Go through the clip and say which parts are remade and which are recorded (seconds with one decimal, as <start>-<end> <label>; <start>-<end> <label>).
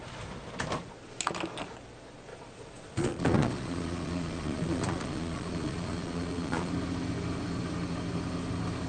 0.0-2.3 recorded; 2.3-6.7 remade; 6.7-8.9 recorded